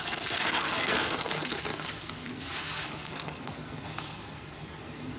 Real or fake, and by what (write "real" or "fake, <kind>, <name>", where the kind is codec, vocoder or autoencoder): fake, codec, SNAC